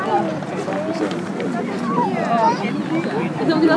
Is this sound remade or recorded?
recorded